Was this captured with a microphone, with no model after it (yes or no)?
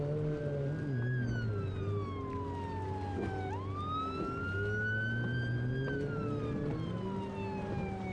yes